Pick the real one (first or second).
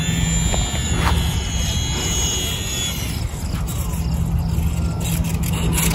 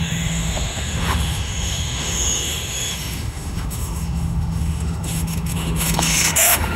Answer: first